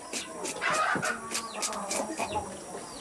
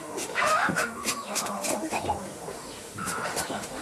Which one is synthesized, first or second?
second